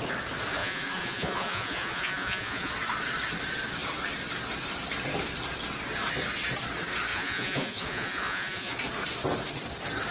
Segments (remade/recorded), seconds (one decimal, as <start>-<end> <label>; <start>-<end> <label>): 0.0-0.6 recorded; 0.6-2.7 remade; 2.7-7.1 recorded; 7.1-8.8 remade; 8.8-10.1 recorded